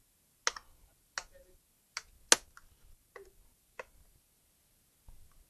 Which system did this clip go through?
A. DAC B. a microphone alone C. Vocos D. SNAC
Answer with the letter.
B